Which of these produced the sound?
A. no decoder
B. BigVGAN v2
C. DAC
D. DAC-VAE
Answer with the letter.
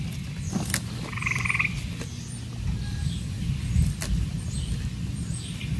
A